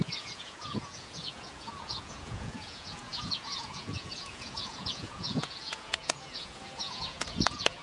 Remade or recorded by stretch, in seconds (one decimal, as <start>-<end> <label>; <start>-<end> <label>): 0.0-7.8 remade